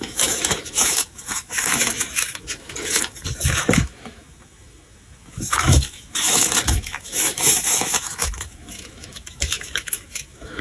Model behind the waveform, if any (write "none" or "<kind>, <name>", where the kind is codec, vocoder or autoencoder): autoencoder, DAC-VAE